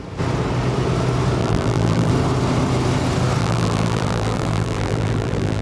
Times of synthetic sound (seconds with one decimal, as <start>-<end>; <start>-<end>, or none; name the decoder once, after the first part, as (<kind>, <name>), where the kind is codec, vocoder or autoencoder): 1.4-2.1 (vocoder, BigVGAN v2); 3.4-5.6